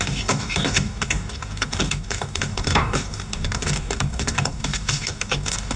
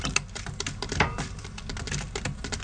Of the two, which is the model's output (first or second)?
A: first